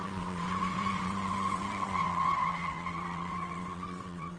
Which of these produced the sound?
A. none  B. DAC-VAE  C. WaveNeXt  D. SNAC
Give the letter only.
C